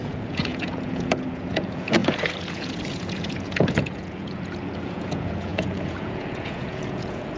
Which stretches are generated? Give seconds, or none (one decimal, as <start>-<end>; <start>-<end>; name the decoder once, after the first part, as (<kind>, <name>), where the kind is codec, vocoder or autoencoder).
0.0-7.4 (vocoder, Vocos)

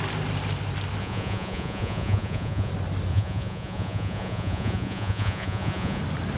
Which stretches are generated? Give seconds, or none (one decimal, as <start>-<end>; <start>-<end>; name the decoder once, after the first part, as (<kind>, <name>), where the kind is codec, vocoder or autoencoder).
1.0-2.7 (vocoder, Vocos); 3.1-6.0